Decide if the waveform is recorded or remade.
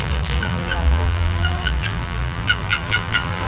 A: remade